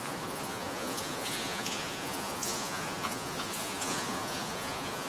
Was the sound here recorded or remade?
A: remade